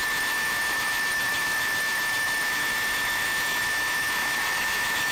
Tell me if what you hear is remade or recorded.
remade